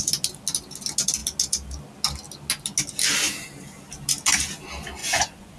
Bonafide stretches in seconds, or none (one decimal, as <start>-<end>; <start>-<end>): 0.0-5.0